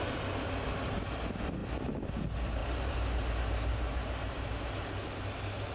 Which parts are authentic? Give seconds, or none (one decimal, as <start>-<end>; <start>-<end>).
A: 0.0-2.6; 3.3-3.7; 4.5-5.7